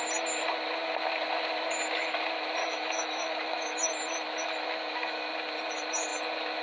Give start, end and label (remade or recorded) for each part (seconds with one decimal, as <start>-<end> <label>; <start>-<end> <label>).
0.0-2.6 recorded; 2.6-3.9 remade; 3.9-4.4 recorded; 4.4-5.3 remade; 5.3-6.6 recorded